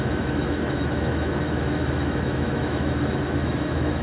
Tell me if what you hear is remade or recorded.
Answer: remade